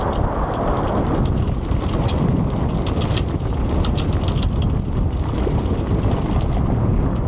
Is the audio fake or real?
real